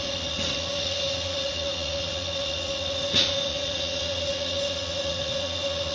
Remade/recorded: remade